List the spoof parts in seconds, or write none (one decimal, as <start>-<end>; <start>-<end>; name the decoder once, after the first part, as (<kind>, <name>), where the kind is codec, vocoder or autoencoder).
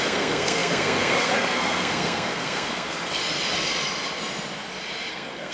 0.0-3.2 (codec, SNAC); 5.1-5.5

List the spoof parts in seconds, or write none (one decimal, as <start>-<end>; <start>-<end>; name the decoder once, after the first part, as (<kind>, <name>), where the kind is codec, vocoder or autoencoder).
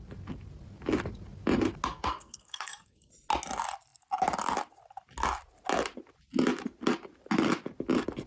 1.9-3.1 (codec, SNAC)